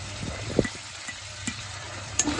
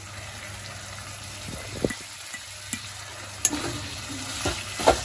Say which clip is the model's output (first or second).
first